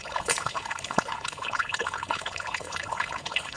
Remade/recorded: remade